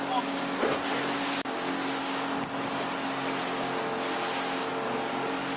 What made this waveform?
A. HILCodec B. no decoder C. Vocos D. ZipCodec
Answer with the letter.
B